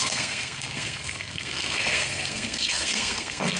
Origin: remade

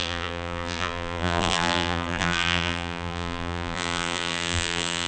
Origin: remade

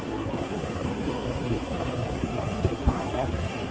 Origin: remade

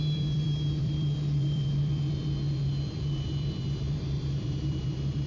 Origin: remade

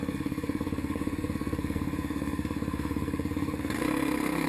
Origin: remade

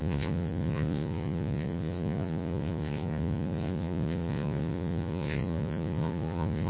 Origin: remade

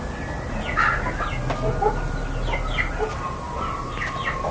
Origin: recorded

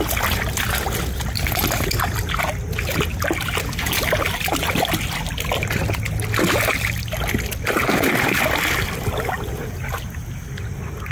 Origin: recorded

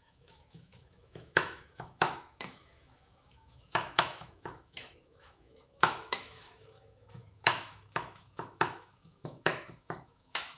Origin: remade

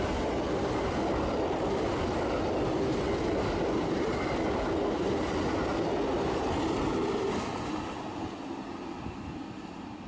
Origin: recorded